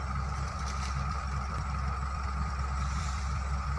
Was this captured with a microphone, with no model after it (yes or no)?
no